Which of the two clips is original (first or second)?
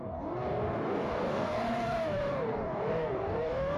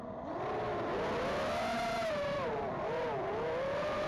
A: second